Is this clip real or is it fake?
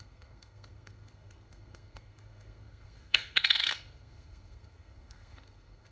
fake